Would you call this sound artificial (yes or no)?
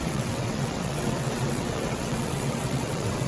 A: yes